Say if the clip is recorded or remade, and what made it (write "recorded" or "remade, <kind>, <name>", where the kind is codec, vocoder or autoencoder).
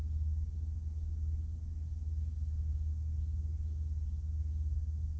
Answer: recorded